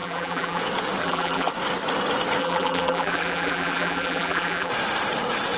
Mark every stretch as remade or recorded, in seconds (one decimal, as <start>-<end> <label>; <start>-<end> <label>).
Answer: 0.0-0.6 remade; 0.6-1.0 recorded; 1.0-1.5 remade; 1.5-2.4 recorded; 2.4-4.7 remade; 4.7-5.6 recorded